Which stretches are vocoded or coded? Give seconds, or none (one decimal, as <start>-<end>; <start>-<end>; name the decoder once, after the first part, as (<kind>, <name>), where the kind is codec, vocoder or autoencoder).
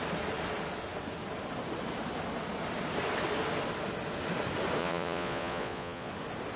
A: 4.8-6.1 (vocoder, Vocos)